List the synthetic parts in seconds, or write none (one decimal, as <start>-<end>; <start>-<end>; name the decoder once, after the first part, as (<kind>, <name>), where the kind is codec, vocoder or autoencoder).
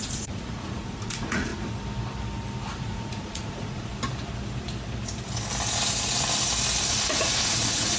0.0-1.5 (vocoder, Vocos); 2.7-3.9; 6.9-8.0